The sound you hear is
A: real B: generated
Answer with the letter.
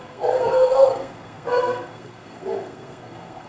B